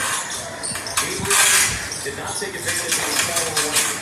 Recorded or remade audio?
recorded